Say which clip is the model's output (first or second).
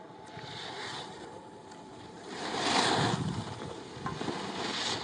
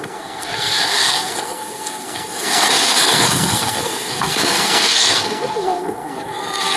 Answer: second